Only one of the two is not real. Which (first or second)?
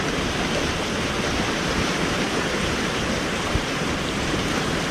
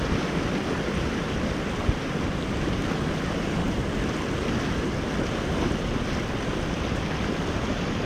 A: first